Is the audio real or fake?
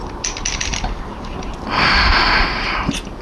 real